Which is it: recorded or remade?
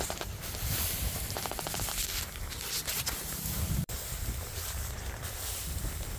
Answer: remade